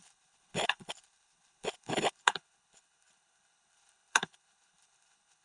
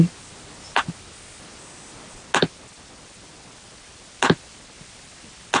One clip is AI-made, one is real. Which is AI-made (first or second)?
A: first